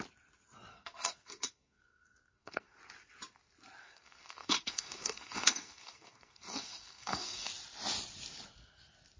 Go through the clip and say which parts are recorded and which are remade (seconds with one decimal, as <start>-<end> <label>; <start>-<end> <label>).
0.0-0.7 recorded; 0.7-2.8 remade; 2.8-3.8 recorded; 3.8-7.5 remade; 7.5-9.2 recorded